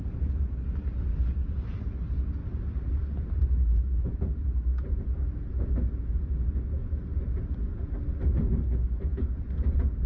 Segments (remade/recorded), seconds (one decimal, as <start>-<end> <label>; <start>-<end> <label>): 0.0-2.4 recorded; 2.4-5.0 remade; 5.0-6.8 recorded; 6.8-7.6 remade; 7.6-10.1 recorded

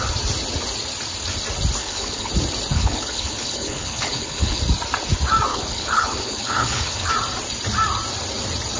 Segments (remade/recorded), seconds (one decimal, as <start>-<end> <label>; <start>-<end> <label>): 0.0-1.8 recorded; 1.8-2.3 remade; 2.3-2.7 recorded; 2.7-4.6 remade; 4.6-5.5 recorded; 5.5-7.1 remade; 7.1-8.8 recorded

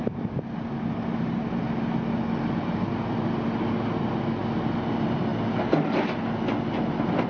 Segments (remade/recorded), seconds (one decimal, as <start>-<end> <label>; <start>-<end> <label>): 0.0-7.3 recorded

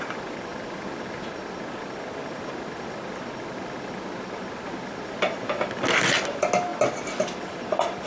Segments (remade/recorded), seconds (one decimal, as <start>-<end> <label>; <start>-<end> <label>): 0.0-8.1 recorded

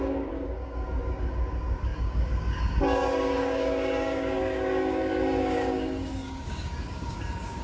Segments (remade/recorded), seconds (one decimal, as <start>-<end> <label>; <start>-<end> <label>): 0.0-7.6 remade

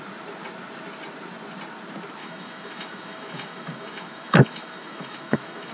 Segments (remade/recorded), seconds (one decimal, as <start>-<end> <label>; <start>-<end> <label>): 0.0-2.2 recorded; 2.2-5.7 remade

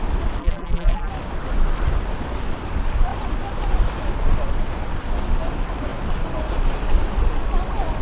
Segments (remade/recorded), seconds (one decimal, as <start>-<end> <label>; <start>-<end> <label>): 0.0-0.4 recorded; 0.4-1.1 remade; 1.1-8.0 recorded